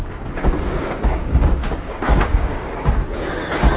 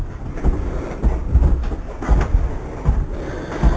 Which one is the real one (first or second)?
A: second